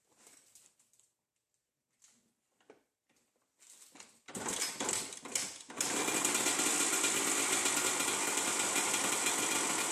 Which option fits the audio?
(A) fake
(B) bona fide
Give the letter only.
B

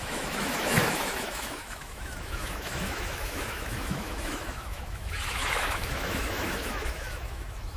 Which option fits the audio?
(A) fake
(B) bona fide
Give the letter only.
A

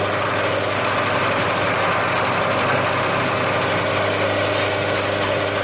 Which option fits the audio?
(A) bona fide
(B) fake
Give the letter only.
A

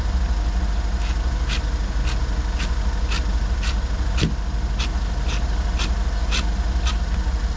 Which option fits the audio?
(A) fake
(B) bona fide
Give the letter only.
B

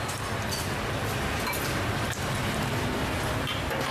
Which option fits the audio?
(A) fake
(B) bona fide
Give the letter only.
B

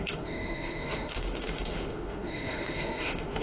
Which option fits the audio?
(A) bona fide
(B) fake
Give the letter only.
B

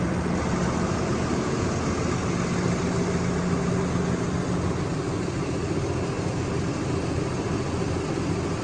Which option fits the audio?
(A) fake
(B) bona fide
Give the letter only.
B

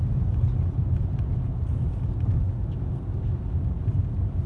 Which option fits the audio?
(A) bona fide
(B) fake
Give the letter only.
A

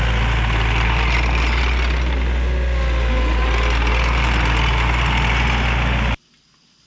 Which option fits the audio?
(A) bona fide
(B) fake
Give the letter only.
A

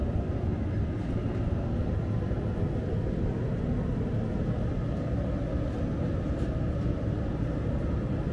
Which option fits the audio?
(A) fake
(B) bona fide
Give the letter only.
B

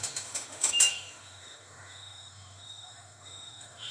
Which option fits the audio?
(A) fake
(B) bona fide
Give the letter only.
A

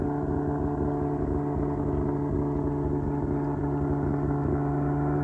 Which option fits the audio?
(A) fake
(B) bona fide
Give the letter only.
B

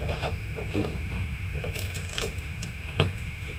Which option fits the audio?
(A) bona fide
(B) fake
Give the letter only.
B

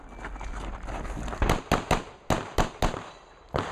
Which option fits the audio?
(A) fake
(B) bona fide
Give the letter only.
B